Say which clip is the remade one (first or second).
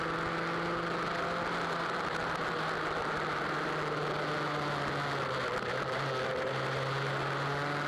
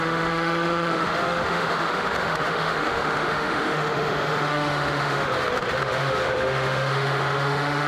second